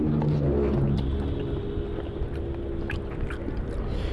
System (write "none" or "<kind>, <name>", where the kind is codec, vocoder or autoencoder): none